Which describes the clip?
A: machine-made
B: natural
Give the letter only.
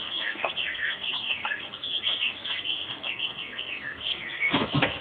A